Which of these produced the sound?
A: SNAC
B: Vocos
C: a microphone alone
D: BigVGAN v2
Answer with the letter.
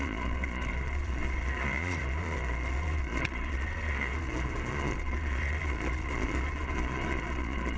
B